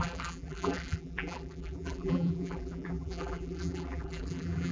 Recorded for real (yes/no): no